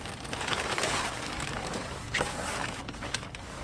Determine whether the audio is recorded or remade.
remade